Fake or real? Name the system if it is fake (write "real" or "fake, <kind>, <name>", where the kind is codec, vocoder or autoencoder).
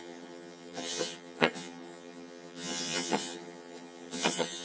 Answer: fake, vocoder, HiFi-GAN